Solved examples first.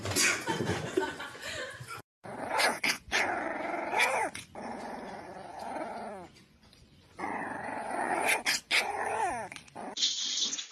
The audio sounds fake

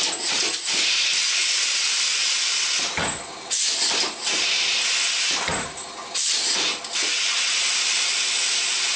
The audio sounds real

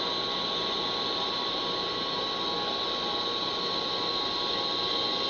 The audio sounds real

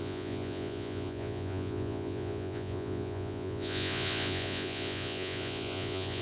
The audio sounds fake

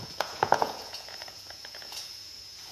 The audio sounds fake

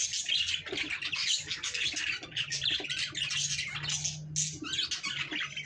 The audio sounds real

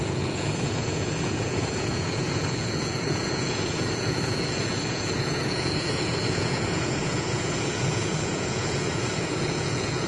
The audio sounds fake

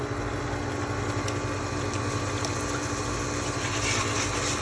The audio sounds real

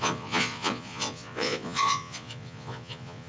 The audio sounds fake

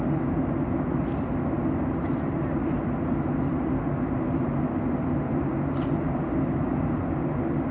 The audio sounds real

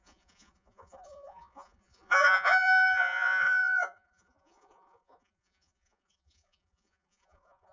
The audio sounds fake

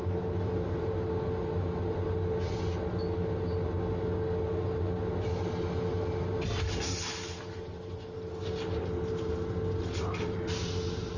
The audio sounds real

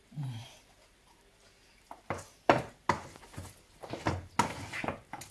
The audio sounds real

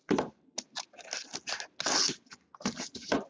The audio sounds real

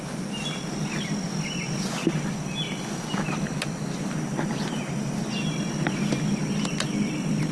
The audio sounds real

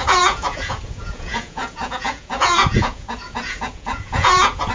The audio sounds fake